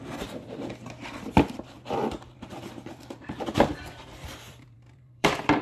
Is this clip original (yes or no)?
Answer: no